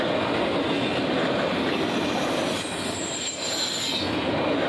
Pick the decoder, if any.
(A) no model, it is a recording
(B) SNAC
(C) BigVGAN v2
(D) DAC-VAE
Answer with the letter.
A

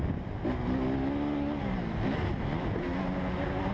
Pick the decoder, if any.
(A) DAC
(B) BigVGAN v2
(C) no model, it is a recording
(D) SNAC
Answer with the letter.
C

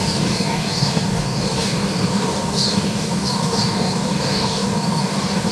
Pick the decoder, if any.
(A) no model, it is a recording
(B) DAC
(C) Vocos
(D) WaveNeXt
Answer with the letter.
B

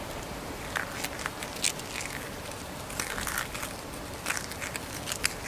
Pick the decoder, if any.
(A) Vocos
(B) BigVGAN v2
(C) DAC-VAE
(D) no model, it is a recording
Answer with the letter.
D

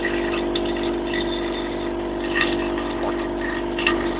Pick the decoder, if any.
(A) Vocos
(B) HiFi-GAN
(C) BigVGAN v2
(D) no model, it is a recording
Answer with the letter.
D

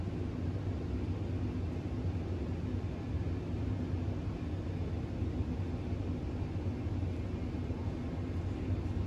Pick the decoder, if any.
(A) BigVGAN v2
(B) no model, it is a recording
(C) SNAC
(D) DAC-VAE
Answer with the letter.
B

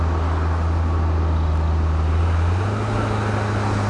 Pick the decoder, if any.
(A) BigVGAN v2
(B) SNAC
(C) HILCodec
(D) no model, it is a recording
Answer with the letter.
D